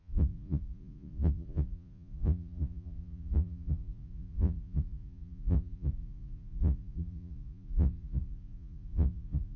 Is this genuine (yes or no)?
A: no